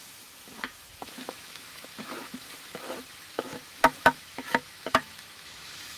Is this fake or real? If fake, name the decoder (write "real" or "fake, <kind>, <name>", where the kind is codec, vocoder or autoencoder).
fake, autoencoder, DAC-VAE